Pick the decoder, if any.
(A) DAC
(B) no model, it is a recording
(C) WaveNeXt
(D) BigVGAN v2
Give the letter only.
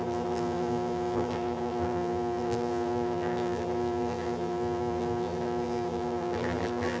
D